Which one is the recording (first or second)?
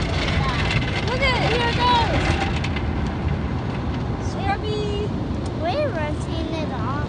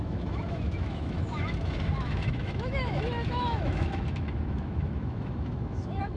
first